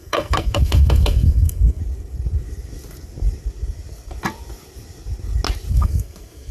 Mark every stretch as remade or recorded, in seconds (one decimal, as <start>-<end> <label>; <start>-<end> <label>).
0.0-1.8 remade; 1.8-5.7 recorded; 5.7-6.5 remade